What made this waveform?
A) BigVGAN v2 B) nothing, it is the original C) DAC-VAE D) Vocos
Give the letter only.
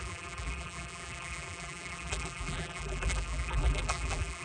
A